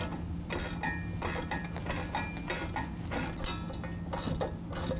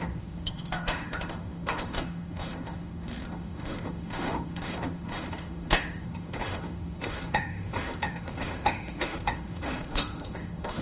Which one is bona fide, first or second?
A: first